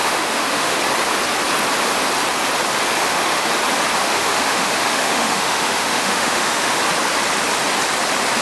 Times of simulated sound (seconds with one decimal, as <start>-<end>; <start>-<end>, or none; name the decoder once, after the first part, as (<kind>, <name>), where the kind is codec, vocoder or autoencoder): 0.0-0.8 (autoencoder, DAC-VAE); 3.0-3.5; 4.0-6.8